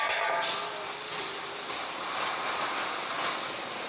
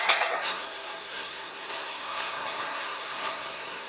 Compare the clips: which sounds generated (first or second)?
second